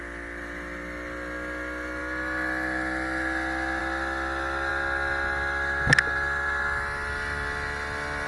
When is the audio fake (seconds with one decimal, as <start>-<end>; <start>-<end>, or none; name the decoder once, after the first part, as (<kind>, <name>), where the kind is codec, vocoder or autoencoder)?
none